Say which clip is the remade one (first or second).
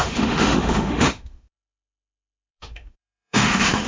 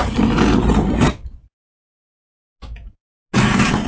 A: first